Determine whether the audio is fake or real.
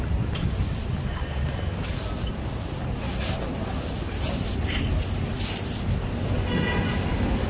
real